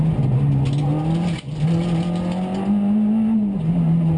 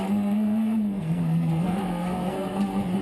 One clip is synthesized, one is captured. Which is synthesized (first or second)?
second